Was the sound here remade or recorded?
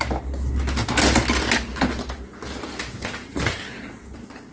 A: recorded